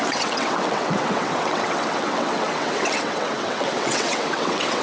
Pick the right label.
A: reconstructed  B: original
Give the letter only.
A